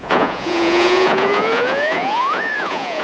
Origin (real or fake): fake